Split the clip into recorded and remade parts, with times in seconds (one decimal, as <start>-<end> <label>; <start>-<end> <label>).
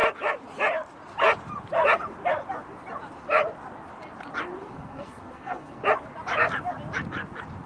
0.0-4.6 recorded; 4.6-5.8 remade; 5.8-7.7 recorded